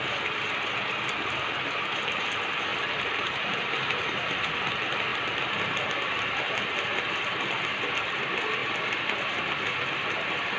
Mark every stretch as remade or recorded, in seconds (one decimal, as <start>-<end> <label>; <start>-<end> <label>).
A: 0.0-2.7 recorded; 2.7-4.5 remade; 4.5-8.6 recorded; 8.6-9.8 remade; 9.8-10.6 recorded